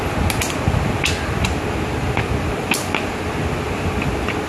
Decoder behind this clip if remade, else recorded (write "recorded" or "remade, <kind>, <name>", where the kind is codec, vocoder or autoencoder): recorded